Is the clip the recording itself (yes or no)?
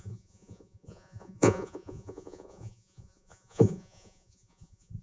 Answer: no